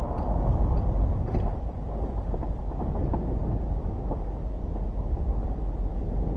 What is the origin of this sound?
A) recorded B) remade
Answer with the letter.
B